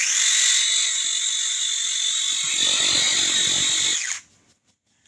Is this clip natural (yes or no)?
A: yes